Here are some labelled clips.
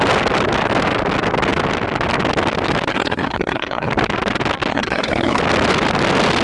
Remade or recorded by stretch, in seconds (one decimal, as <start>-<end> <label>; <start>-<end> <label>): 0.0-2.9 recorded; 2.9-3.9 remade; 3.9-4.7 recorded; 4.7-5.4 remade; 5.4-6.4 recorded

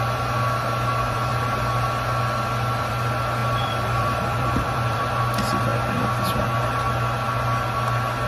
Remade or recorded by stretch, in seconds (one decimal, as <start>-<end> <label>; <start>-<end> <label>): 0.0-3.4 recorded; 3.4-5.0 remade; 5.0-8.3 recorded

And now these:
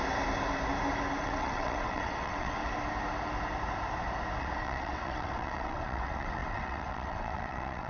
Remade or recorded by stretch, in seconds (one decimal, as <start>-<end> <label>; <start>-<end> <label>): 0.0-1.2 recorded; 1.2-2.6 remade; 2.6-4.4 recorded; 4.4-7.9 remade

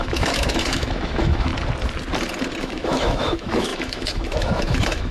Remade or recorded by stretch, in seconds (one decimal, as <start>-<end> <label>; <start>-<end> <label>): 0.0-1.5 remade; 1.5-2.6 recorded; 2.6-5.1 remade